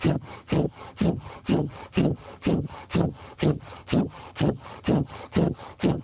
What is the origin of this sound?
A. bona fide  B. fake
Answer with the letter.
B